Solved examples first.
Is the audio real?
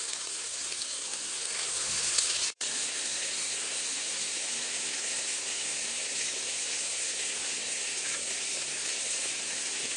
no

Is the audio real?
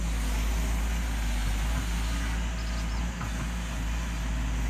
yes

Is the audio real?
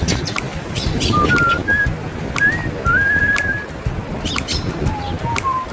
yes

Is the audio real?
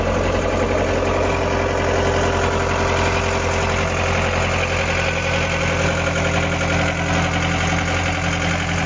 yes